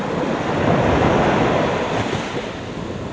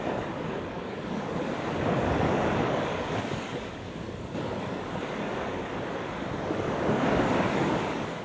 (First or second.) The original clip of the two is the first